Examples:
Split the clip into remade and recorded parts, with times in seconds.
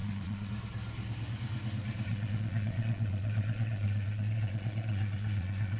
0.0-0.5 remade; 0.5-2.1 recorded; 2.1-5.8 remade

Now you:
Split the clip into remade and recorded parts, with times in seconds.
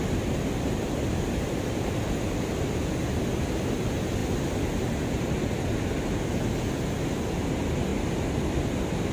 0.0-9.1 recorded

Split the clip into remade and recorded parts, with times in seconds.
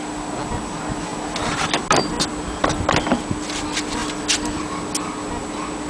0.0-5.9 recorded